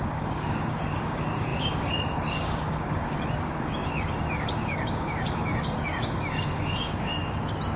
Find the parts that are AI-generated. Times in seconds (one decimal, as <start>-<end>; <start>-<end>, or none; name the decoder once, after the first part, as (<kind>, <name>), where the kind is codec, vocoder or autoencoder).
0.0-7.1 (codec, DAC)